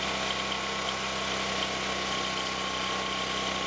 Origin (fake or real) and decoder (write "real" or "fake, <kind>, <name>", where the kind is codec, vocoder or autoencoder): real